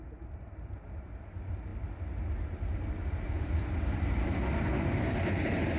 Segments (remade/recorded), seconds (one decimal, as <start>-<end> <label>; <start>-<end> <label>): 0.0-5.8 recorded